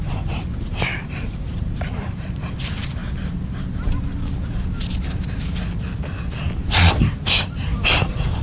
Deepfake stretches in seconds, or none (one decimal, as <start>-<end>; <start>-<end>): 0.0-3.0; 6.9-8.4

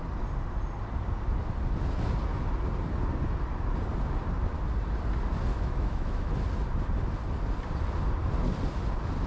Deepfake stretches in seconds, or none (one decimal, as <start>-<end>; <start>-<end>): 5.5-6.4

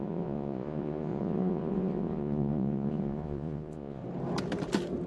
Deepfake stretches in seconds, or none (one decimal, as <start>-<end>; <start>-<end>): 0.0-4.0

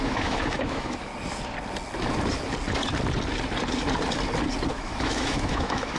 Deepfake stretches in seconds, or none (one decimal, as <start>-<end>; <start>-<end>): 0.0-1.1; 4.7-6.0

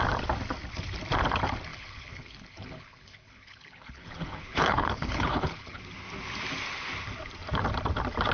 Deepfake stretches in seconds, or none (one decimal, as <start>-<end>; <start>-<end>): 1.7-5.8

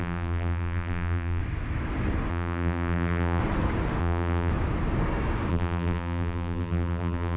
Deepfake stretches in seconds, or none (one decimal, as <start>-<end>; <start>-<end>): 0.0-1.4; 2.3-3.4; 4.0-4.5; 5.5-7.4